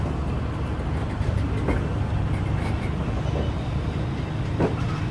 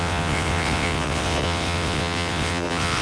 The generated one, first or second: second